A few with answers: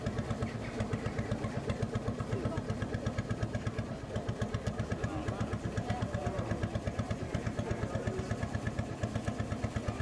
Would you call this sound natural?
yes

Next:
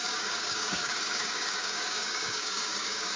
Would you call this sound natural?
no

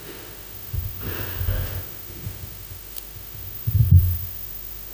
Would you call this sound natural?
no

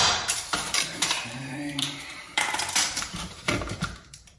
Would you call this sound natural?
no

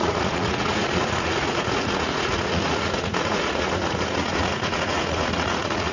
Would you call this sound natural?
no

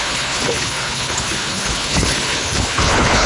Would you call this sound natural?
no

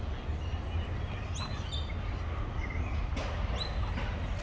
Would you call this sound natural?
yes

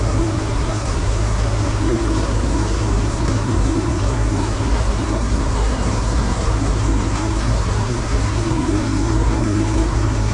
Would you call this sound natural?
no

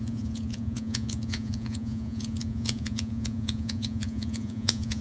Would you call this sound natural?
no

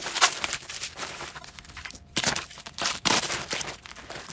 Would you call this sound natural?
no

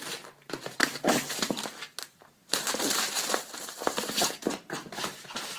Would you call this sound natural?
no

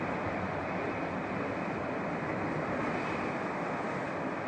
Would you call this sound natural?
no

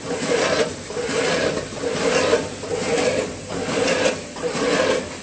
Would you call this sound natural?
yes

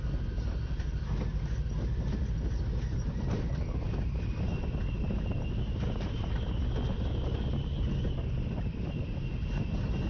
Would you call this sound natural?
yes